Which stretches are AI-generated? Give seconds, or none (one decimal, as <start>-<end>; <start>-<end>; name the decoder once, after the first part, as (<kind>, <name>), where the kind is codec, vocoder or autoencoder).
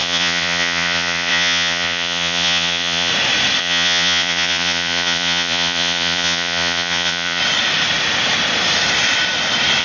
0.0-3.1 (vocoder, Vocos); 3.6-7.4